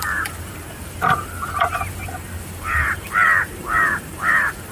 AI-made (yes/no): yes